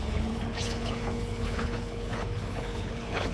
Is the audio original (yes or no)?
no